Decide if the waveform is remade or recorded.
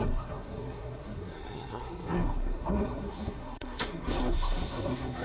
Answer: remade